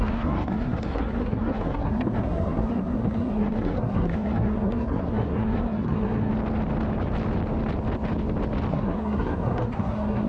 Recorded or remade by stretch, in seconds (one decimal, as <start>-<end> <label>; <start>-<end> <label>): 0.0-6.3 remade; 6.3-8.7 recorded; 8.7-10.3 remade